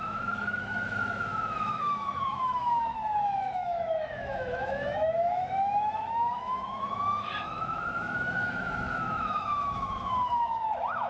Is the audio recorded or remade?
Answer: remade